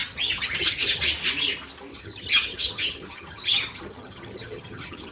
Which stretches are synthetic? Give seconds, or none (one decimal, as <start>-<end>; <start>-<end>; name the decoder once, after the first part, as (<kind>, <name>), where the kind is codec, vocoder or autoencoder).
0.0-1.0 (vocoder, HiFi-GAN); 1.9-5.1